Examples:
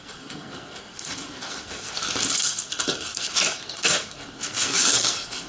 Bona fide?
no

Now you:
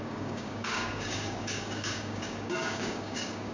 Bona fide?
no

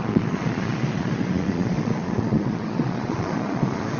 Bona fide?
no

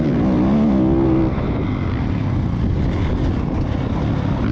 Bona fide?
yes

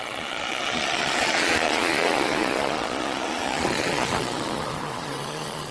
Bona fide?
no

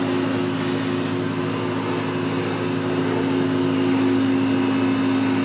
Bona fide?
no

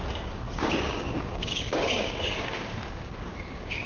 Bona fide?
no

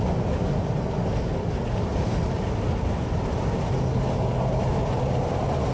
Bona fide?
yes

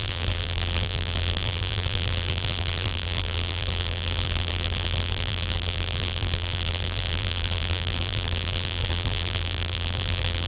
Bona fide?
no